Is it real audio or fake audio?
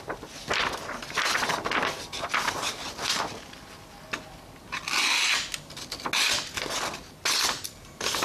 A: real